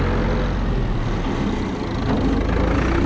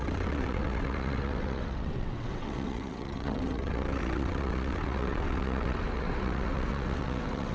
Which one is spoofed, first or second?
second